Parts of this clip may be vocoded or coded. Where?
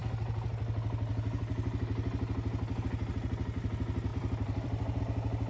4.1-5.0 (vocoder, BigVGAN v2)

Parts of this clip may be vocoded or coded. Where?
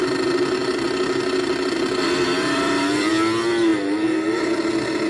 0.6-3.1 (vocoder, BigVGAN v2)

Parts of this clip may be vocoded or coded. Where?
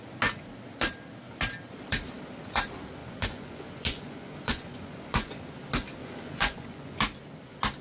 3.0-5.4 (vocoder, Vocos); 6.0-7.0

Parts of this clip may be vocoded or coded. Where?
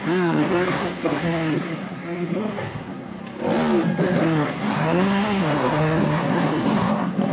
0.0-3.2 (codec, SNAC); 4.0-7.3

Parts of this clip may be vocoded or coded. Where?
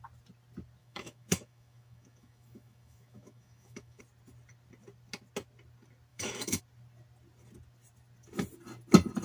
0.8-4.0 (autoencoder, DAC-VAE); 6.1-6.6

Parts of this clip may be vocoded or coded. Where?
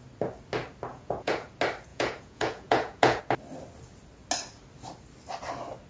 0.9-1.5 (vocoder, Vocos); 1.9-3.2